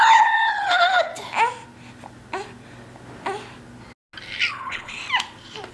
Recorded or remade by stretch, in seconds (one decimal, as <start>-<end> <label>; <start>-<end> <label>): 0.0-1.1 remade; 1.1-4.5 recorded; 4.5-5.0 remade; 5.0-5.7 recorded